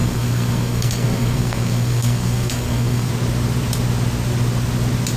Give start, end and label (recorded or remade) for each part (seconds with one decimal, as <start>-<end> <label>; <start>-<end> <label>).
0.0-3.1 remade; 3.1-5.2 recorded